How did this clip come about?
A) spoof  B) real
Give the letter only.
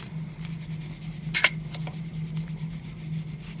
B